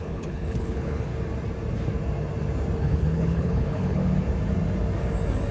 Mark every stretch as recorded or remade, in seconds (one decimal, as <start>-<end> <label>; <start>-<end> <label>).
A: 0.0-1.1 remade; 1.1-2.8 recorded; 2.8-4.0 remade; 4.0-5.5 recorded